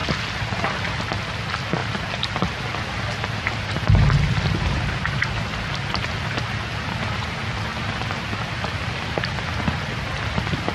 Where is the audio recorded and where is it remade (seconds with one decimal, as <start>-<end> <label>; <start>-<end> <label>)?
0.0-10.7 recorded